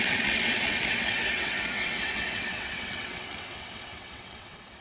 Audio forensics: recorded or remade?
remade